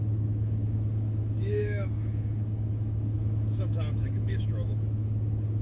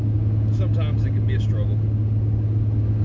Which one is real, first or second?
second